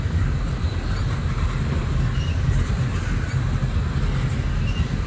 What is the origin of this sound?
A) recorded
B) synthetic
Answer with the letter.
A